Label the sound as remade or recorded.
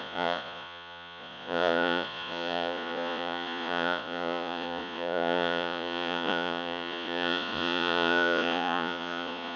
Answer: remade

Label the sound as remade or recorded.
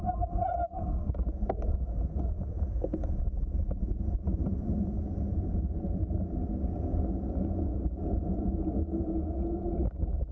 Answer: recorded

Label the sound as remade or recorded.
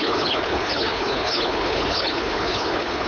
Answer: remade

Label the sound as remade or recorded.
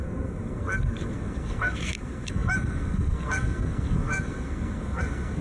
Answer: remade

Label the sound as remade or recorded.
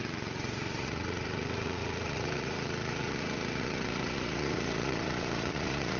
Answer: remade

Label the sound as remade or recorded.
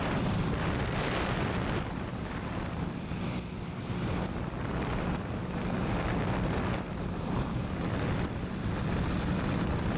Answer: remade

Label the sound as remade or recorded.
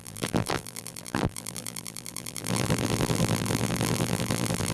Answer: remade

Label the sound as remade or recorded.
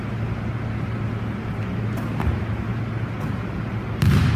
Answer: recorded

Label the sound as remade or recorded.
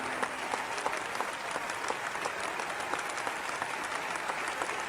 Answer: recorded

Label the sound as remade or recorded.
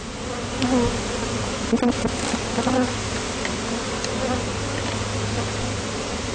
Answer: recorded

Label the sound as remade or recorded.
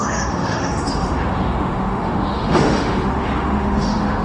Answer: remade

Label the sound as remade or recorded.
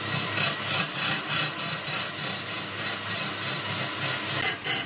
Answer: recorded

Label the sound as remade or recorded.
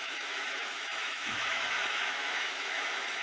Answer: remade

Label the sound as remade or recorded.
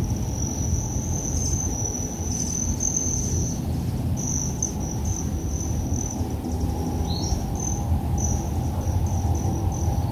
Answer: recorded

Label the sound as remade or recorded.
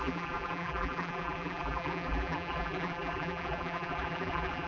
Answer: remade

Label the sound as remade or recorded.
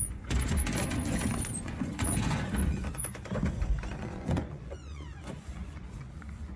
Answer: remade